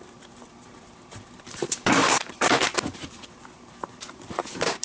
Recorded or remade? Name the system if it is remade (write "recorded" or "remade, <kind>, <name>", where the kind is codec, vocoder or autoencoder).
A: remade, vocoder, BigVGAN v2